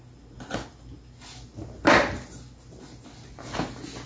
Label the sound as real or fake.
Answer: real